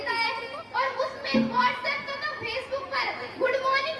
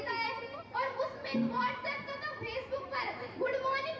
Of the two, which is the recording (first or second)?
first